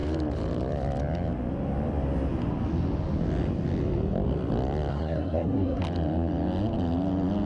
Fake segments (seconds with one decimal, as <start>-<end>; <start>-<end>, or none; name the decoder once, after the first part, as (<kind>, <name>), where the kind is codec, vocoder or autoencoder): 4.9-5.8 (codec, SNAC)